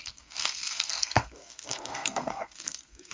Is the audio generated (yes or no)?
yes